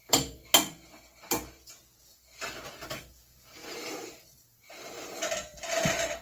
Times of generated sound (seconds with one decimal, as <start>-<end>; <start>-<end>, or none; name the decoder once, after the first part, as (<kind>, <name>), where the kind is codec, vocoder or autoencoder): 0.0-0.4 (vocoder, BigVGAN v2); 2.0-6.2

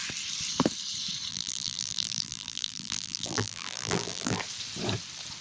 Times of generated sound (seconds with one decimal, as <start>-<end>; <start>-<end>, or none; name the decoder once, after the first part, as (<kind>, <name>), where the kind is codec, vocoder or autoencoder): 1.3-4.4 (vocoder, BigVGAN v2)